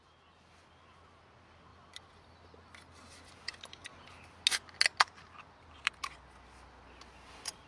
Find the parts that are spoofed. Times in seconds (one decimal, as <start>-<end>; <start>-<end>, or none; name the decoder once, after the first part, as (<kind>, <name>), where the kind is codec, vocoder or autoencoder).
1.7-3.1 (vocoder, BigVGAN v2)